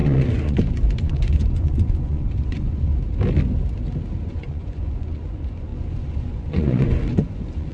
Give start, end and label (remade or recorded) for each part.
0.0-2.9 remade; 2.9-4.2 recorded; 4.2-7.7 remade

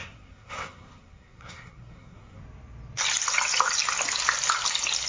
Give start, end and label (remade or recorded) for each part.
0.0-2.4 remade; 2.4-5.1 recorded

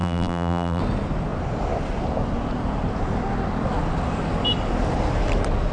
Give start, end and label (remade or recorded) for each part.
0.0-0.8 remade; 0.8-5.7 recorded

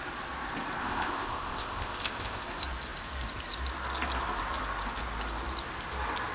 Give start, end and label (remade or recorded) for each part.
0.0-0.8 recorded; 0.8-2.4 remade; 2.4-6.3 recorded

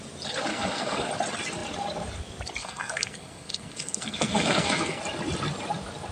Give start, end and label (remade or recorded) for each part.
0.0-0.5 recorded; 0.5-1.1 remade; 1.1-2.6 recorded; 2.6-5.0 remade; 5.0-6.1 recorded

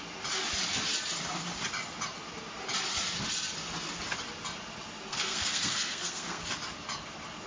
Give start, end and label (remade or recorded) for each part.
0.0-5.1 recorded; 5.1-6.4 remade; 6.4-7.5 recorded